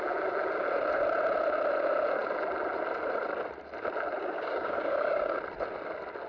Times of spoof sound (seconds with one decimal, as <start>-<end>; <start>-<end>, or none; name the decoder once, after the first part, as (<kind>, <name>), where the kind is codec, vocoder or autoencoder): 4.2-5.4 (codec, DAC)